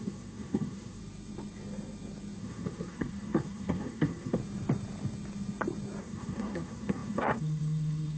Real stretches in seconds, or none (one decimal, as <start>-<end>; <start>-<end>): 1.0-2.4; 4.4-6.0